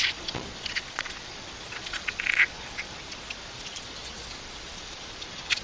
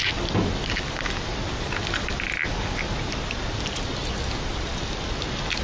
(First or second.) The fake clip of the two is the first